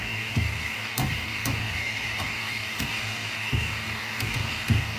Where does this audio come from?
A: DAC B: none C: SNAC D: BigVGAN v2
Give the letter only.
A